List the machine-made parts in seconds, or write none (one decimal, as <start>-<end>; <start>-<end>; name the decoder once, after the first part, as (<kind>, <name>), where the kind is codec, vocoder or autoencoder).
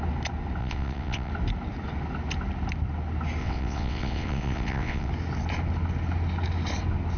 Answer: 0.6-1.3 (vocoder, WaveNeXt); 3.4-5.1